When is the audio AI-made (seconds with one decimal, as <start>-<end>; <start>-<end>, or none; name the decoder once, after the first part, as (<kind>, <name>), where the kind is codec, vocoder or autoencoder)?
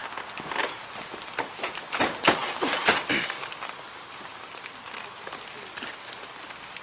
none